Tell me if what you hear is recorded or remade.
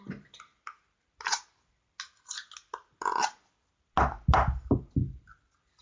recorded